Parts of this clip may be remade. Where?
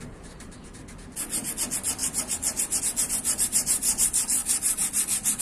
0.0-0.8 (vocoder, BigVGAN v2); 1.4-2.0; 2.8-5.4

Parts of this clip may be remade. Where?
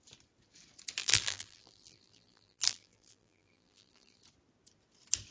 1.0-4.2 (vocoder, BigVGAN v2)